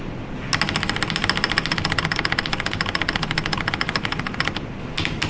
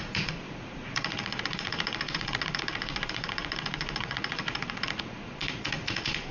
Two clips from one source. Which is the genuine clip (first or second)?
first